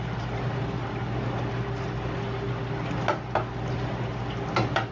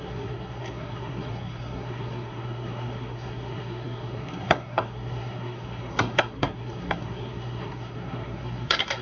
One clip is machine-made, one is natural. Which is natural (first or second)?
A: first